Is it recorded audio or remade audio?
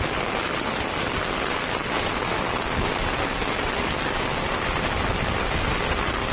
recorded